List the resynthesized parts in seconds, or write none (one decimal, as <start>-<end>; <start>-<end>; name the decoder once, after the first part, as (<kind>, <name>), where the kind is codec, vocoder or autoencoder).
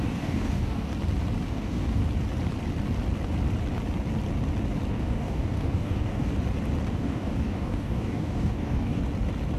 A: 0.0-0.9 (codec, DAC); 1.5-2.0; 4.9-6.3; 6.9-9.0